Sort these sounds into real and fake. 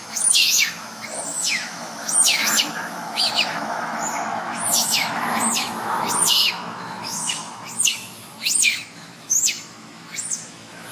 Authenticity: fake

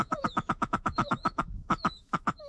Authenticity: fake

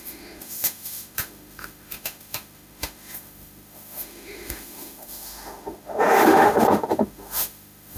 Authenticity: fake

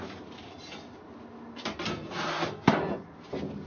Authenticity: real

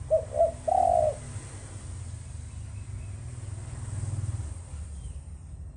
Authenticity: real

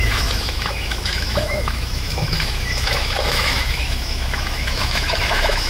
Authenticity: fake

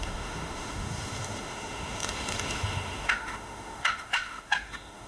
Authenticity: fake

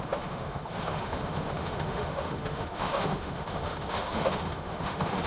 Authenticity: fake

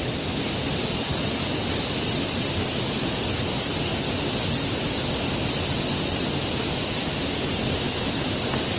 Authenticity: real